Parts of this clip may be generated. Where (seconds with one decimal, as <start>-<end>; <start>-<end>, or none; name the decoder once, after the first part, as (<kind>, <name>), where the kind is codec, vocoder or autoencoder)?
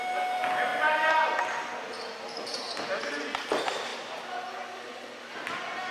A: none